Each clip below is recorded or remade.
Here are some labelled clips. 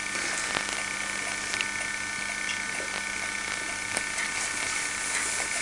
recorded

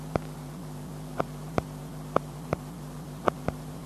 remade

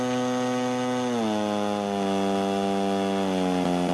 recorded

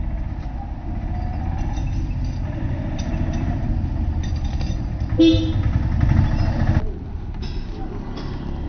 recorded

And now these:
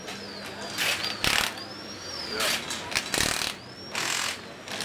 recorded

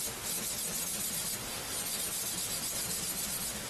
recorded